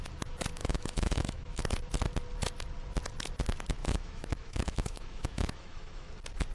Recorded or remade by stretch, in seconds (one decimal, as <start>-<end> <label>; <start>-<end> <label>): 0.0-0.6 recorded; 0.6-1.6 remade; 1.6-3.8 recorded; 3.8-6.1 remade; 6.1-6.5 recorded